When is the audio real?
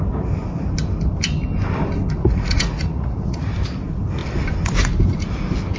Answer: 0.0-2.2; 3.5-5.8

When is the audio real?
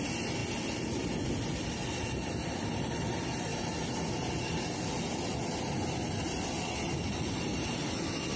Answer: 0.0-8.4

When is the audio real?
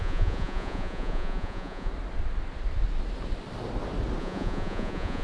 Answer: 1.9-4.2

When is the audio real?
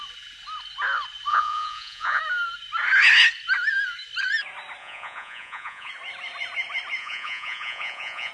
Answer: 0.0-1.3; 2.2-4.8; 5.9-7.0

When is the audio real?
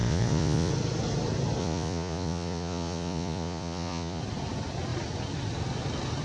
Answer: 0.7-1.6; 4.2-6.2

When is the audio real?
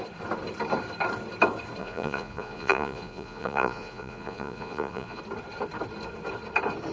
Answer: 0.0-1.8; 5.2-6.9